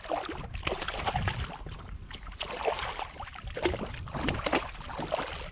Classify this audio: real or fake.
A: real